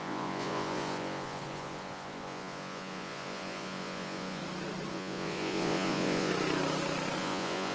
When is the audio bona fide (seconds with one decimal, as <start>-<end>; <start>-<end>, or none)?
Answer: 4.4-4.9; 6.3-7.2